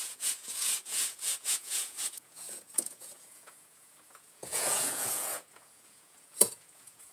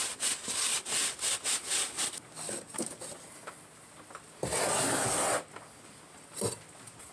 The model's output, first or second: first